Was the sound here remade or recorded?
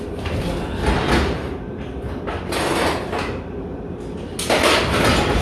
recorded